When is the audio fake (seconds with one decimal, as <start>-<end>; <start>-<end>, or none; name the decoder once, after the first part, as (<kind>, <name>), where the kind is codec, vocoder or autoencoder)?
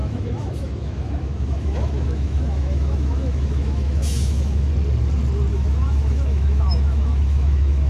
0.0-4.7 (autoencoder, DAC-VAE); 5.5-7.9